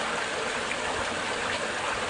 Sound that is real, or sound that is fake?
real